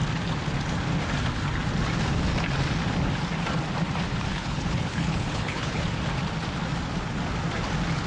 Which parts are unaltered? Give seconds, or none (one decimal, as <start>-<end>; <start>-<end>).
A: 0.0-4.3; 5.8-8.1